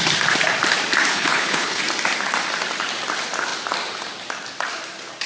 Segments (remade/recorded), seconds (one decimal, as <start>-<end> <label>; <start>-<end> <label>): 0.0-1.1 recorded; 1.1-1.8 remade; 1.8-5.3 recorded